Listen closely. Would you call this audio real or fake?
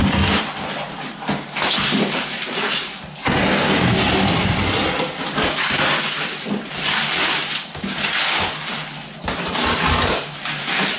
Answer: real